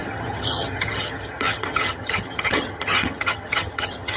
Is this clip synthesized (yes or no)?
yes